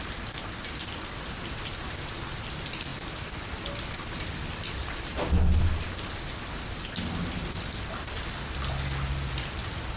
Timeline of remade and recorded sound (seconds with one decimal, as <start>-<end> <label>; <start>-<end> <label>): 0.0-10.0 recorded